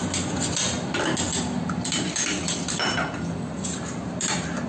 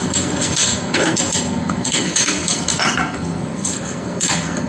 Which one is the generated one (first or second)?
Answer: second